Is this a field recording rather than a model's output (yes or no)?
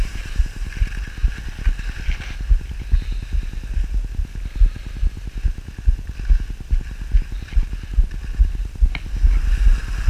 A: yes